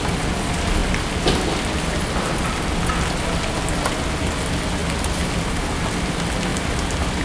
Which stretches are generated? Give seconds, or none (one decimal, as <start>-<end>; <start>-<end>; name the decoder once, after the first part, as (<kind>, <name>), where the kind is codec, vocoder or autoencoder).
0.8-1.6 (vocoder, BigVGAN v2)